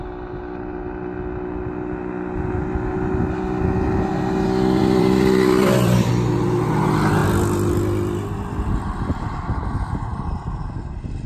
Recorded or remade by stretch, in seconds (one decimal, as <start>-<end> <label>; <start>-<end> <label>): 0.0-4.8 recorded; 4.8-6.1 remade; 6.1-10.1 recorded; 10.1-11.3 remade